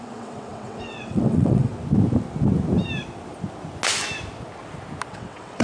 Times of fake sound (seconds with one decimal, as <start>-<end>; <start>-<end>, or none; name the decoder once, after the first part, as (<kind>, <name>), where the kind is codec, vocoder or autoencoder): 0.0-1.7 (vocoder, WaveNeXt); 5.1-5.6